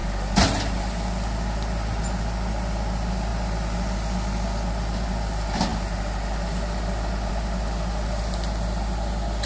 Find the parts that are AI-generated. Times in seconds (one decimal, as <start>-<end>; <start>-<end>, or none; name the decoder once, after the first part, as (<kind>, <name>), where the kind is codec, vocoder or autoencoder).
none